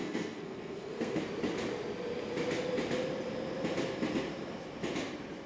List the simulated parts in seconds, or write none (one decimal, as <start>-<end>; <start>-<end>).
0.0-1.2